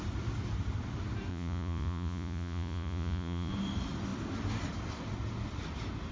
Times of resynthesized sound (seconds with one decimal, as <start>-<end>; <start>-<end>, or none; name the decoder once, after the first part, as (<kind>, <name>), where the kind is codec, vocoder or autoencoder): 1.3-3.5 (vocoder, Vocos)